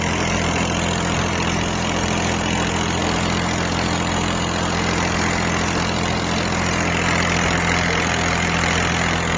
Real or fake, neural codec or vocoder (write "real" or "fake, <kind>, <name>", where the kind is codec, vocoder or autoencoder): real